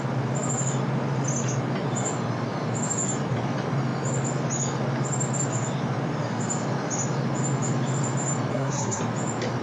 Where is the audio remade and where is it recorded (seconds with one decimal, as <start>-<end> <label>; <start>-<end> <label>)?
0.0-8.5 recorded; 8.5-9.0 remade; 9.0-9.6 recorded